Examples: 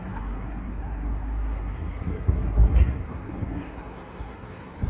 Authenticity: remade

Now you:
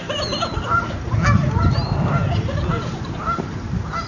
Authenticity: recorded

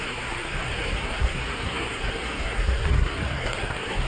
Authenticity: remade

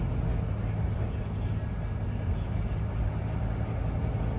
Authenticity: recorded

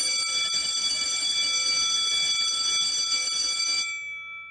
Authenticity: recorded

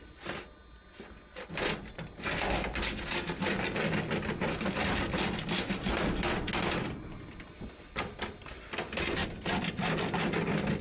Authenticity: recorded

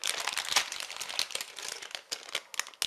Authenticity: recorded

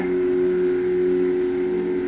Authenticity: recorded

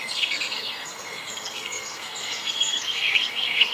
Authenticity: remade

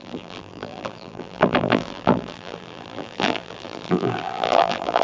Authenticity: remade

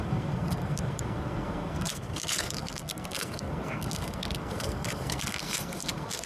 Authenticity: remade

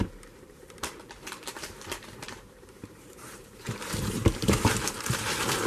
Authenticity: remade